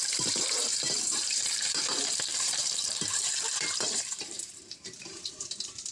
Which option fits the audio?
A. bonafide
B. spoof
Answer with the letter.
B